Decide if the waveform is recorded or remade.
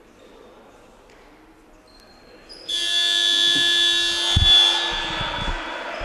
recorded